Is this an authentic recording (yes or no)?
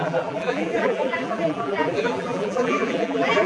no